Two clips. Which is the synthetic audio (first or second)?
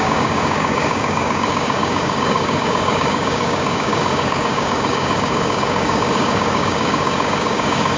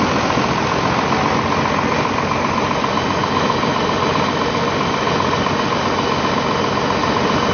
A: first